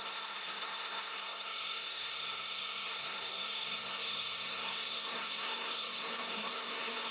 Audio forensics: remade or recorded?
remade